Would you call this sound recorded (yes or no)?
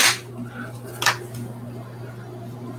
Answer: yes